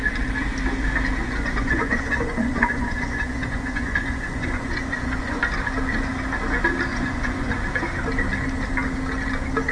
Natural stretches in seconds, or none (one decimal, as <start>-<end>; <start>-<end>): 0.0-1.2; 5.4-6.9; 7.5-9.7